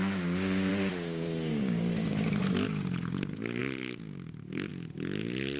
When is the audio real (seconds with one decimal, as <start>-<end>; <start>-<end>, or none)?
0.7-1.5; 2.4-5.6